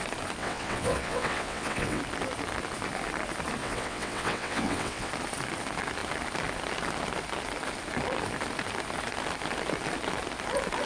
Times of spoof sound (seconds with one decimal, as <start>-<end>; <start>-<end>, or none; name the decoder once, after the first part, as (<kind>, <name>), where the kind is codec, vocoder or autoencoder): 0.4-2.0 (vocoder, WaveNeXt); 3.6-5.1